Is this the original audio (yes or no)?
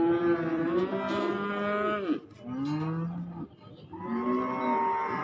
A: yes